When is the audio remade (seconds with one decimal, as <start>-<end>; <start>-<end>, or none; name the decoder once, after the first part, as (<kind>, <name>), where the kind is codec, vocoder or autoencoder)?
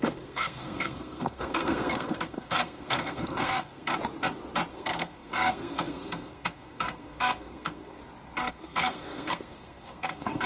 0.0-3.9 (codec, SNAC); 4.7-8.0; 8.5-10.5